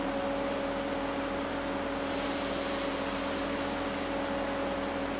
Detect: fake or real real